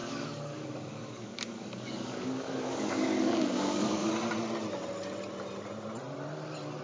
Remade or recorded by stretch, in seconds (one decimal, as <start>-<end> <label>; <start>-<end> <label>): 0.0-4.1 remade; 4.1-6.8 recorded